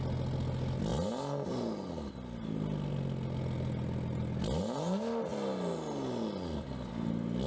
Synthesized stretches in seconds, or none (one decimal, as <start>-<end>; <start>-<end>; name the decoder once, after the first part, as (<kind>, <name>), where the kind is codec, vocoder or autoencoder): none